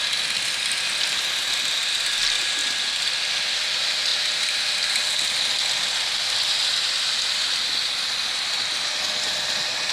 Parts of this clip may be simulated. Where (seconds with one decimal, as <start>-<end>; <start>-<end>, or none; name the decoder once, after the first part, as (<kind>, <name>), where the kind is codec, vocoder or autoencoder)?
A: none